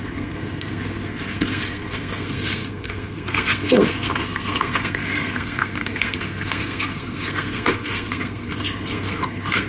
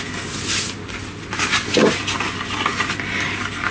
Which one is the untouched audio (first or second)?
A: second